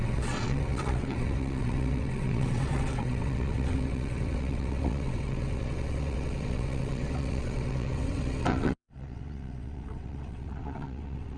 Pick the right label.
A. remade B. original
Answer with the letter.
A